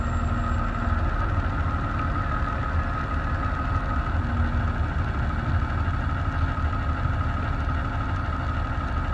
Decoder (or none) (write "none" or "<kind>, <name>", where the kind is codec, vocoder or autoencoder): none